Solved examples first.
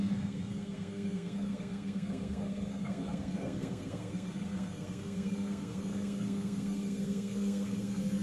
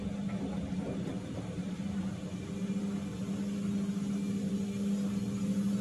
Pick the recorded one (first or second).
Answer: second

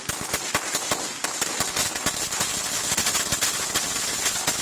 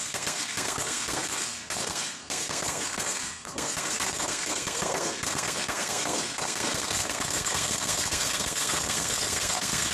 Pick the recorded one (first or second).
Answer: first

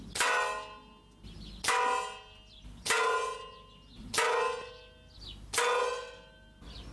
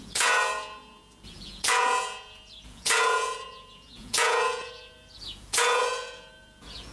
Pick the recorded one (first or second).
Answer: first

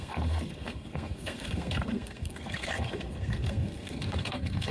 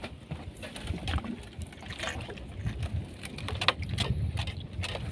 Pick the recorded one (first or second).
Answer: second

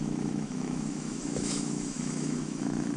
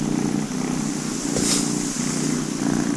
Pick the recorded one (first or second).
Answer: second